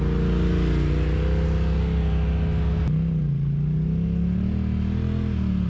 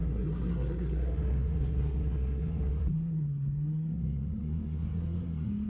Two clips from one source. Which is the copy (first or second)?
second